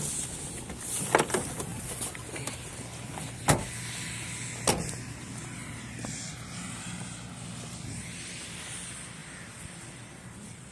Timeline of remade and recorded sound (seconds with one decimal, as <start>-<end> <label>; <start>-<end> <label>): 0.0-1.7 recorded; 1.7-2.7 remade; 2.7-9.2 recorded; 9.2-9.9 remade; 9.9-10.7 recorded